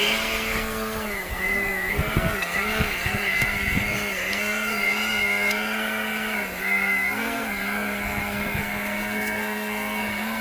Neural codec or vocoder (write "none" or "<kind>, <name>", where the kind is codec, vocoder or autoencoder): codec, SNAC